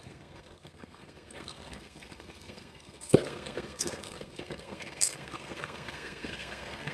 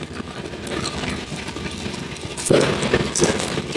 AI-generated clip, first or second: first